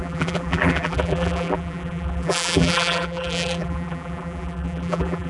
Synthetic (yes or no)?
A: yes